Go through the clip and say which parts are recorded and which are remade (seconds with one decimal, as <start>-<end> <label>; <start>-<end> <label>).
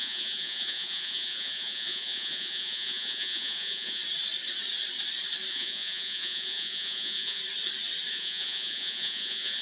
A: 0.0-4.0 remade; 4.0-5.5 recorded; 5.5-7.4 remade; 7.4-8.1 recorded; 8.1-9.6 remade